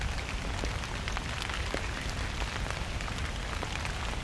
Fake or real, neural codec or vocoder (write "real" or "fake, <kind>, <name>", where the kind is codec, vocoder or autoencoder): real